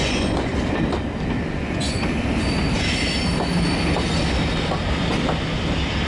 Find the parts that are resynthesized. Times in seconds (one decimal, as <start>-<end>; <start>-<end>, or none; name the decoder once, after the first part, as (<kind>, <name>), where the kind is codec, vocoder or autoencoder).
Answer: 0.0-0.5 (vocoder, Vocos); 1.4-2.0